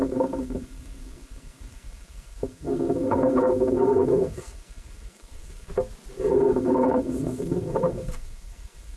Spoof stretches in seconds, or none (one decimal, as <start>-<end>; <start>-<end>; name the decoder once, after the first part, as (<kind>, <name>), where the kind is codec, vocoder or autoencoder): 0.0-5.7 (codec, SNAC); 6.3-9.0